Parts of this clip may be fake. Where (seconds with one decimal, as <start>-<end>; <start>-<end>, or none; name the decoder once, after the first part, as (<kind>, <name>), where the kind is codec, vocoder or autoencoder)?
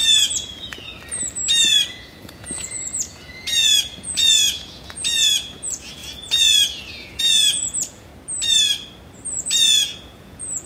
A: 0.0-0.9 (vocoder, Vocos); 1.9-8.1; 9.3-10.7